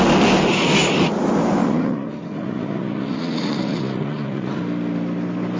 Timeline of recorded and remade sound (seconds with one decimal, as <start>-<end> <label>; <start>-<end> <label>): 0.0-1.6 recorded; 1.6-4.6 remade; 4.6-5.6 recorded